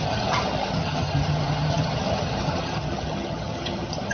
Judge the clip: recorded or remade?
remade